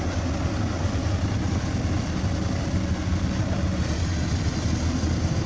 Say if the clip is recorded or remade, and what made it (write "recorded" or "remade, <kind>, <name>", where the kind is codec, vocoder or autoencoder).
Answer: recorded